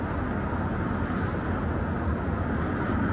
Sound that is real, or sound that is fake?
real